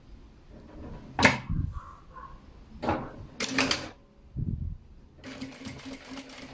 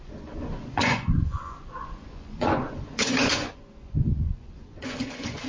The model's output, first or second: second